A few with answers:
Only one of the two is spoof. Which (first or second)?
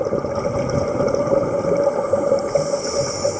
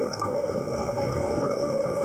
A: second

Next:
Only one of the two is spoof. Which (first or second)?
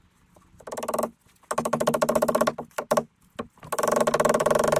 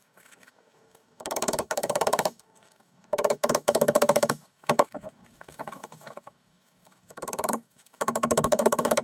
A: second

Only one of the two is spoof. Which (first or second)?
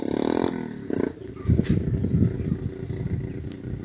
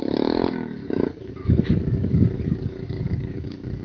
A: second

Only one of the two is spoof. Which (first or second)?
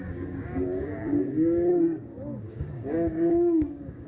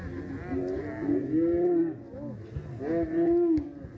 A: first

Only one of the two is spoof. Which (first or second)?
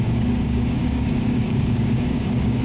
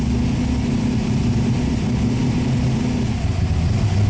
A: first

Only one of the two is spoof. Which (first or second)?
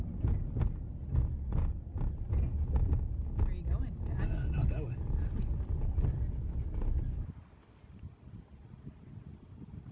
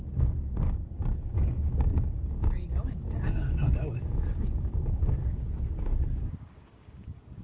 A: second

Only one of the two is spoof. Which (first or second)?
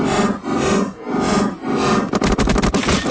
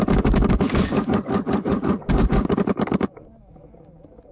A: second